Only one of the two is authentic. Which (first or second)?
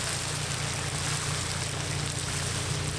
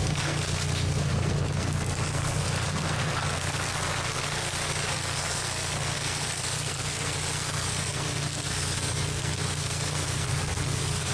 first